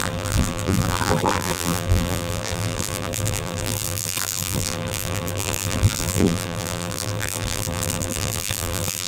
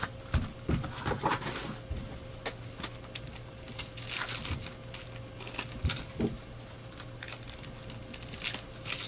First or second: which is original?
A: second